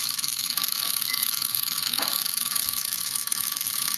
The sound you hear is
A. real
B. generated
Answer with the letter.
B